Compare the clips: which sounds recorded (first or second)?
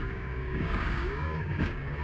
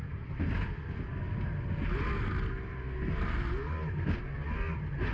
second